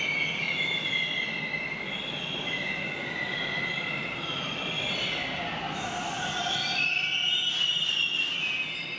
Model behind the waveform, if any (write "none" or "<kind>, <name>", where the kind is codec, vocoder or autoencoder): none